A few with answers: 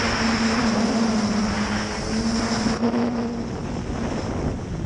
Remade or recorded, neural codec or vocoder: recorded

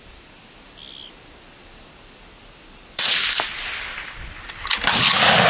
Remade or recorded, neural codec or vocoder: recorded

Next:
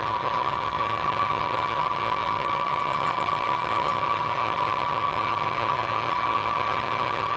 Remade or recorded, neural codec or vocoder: remade, vocoder, HiFi-GAN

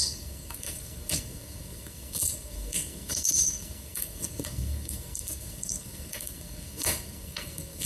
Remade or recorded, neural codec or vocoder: remade, codec, SNAC